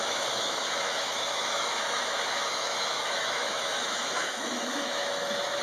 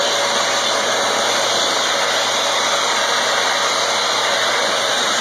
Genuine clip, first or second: second